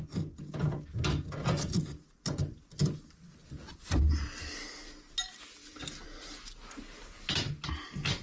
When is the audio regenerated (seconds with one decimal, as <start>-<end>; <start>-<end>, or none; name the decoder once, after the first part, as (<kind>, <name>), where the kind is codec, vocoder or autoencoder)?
none